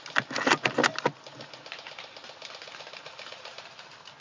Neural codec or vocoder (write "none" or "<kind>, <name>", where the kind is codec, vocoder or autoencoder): none